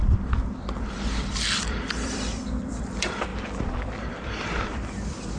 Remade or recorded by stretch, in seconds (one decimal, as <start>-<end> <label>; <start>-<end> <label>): 0.0-3.3 remade; 3.3-4.1 recorded; 4.1-5.4 remade